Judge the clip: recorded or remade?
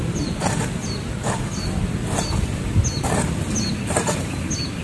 recorded